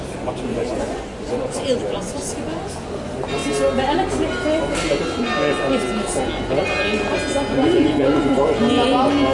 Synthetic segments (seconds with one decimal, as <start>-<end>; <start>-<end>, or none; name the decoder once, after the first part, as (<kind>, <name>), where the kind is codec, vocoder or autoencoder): 0.5-2.7 (vocoder, Vocos); 7.6-8.6